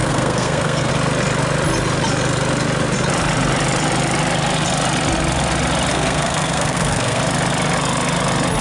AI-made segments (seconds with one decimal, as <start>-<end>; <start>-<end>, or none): 0.0-0.9; 5.9-7.2